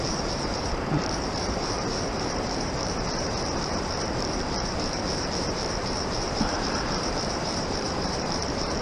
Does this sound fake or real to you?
fake